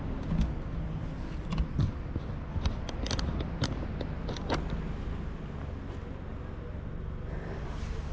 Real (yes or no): yes